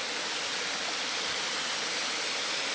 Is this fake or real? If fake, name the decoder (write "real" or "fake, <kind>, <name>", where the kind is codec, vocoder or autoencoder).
real